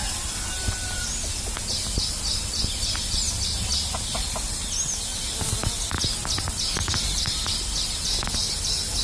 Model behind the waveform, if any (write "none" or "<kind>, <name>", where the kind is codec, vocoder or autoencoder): none